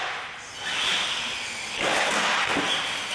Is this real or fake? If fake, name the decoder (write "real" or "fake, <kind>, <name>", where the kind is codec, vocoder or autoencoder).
real